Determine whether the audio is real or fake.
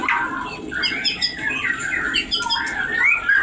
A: real